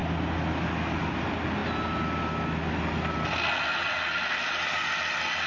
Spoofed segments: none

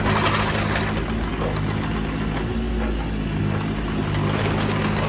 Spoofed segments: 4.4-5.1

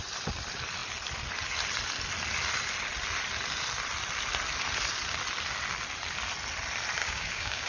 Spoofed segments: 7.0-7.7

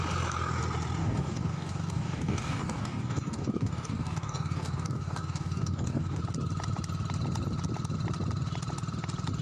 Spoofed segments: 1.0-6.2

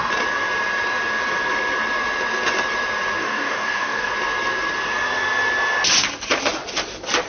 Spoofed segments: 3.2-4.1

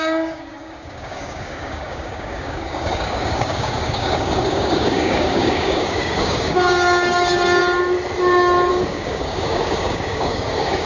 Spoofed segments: 0.0-7.6; 8.7-10.9

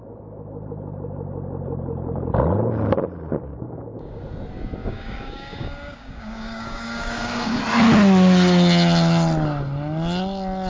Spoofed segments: 3.5-4.2; 4.8-7.6